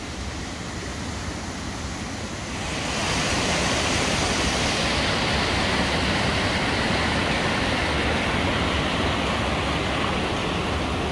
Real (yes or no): yes